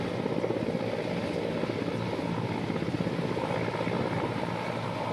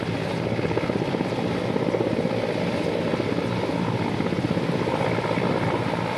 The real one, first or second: first